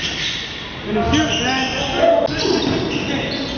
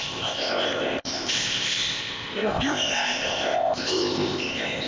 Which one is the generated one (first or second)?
second